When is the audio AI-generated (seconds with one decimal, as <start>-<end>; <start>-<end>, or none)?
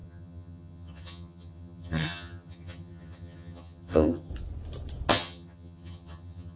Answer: 0.0-4.3; 5.1-6.6